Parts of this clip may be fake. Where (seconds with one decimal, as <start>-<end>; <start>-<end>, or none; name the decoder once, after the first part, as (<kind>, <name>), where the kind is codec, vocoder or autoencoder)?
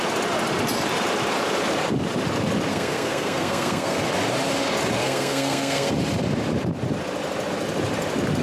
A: 2.7-4.0 (codec, SNAC); 5.0-5.9